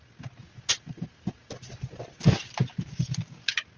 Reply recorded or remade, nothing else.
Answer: recorded